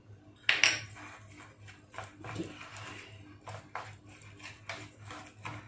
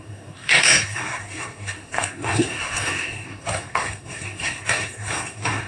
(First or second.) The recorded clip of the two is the first